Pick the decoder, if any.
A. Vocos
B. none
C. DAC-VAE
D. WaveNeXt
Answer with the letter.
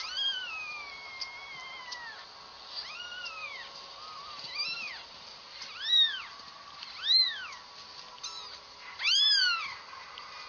B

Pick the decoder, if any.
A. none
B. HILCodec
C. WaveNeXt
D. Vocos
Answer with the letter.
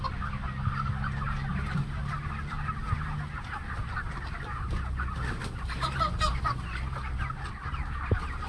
A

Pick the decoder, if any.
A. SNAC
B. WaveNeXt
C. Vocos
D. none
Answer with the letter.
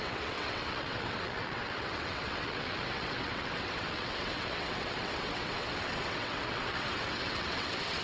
B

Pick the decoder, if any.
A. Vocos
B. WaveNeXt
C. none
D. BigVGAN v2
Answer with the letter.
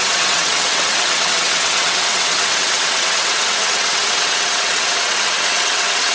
B